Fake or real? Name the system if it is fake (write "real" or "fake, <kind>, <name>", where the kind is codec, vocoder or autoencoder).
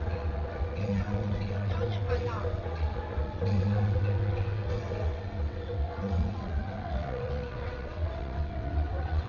fake, vocoder, WaveNeXt